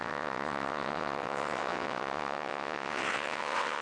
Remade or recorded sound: remade